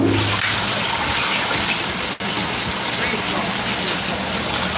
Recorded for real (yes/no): yes